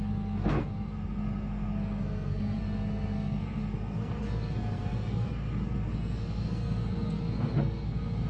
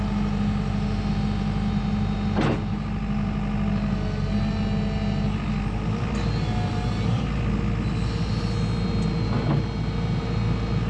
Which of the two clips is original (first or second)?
second